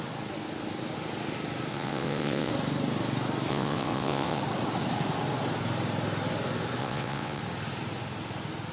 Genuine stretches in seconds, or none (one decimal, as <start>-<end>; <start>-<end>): 0.0-1.7; 2.5-3.5; 4.4-6.8; 7.4-8.7

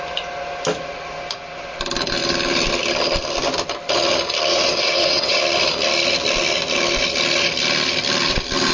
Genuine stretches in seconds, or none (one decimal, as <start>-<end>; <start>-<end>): 0.0-4.5; 5.4-8.7